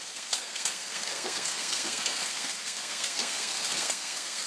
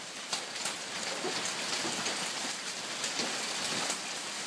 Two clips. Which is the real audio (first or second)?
second